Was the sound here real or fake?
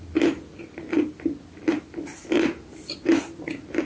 real